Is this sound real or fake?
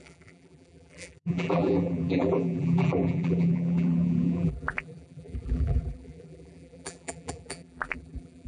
fake